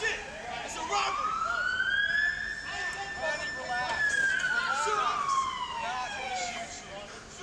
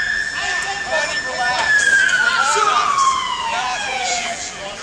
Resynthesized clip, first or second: second